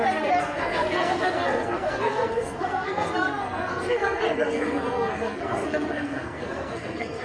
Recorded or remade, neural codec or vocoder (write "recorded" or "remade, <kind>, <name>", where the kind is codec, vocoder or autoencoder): remade, codec, SNAC